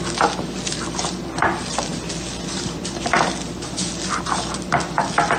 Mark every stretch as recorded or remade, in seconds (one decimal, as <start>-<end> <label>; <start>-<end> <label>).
0.0-5.4 recorded